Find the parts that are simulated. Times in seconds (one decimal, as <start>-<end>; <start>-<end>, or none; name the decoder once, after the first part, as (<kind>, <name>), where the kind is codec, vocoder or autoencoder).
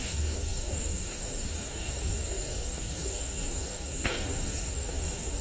0.0-5.4 (codec, DAC)